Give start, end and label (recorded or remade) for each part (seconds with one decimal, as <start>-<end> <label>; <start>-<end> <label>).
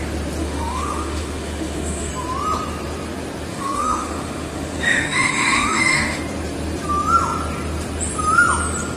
0.0-0.4 recorded; 0.4-2.1 remade; 2.1-3.5 recorded; 3.5-6.2 remade; 6.2-9.0 recorded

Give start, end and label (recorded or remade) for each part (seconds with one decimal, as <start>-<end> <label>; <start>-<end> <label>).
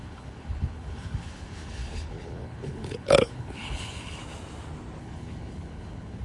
0.0-4.2 remade; 4.2-5.0 recorded; 5.0-6.2 remade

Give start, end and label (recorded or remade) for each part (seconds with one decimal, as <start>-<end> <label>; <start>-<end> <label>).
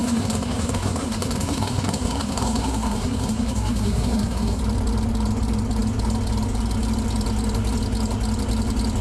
0.0-4.6 remade; 4.6-9.0 recorded